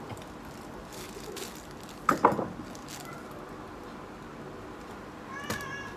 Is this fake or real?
real